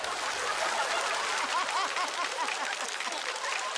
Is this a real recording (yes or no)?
yes